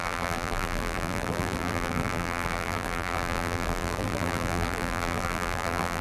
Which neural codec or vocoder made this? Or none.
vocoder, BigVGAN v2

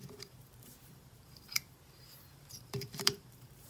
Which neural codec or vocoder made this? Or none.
vocoder, BigVGAN v2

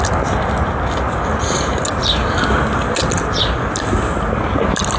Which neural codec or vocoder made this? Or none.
none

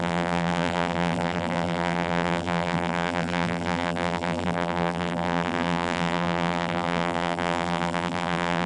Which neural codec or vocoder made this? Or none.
vocoder, BigVGAN v2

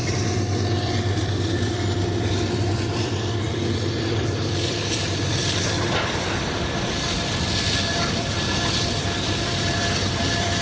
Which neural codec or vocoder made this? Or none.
vocoder, BigVGAN v2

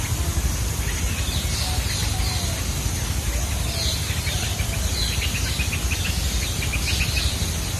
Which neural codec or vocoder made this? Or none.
none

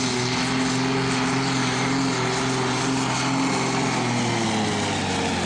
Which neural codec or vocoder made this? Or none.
none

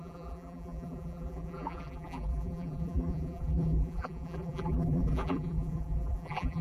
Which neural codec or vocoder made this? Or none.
vocoder, BigVGAN v2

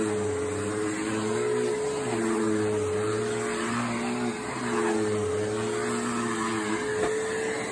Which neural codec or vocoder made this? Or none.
none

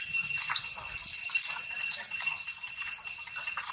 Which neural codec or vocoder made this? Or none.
none